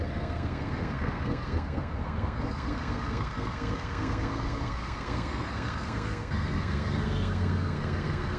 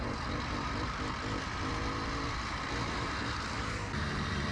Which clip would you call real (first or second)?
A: second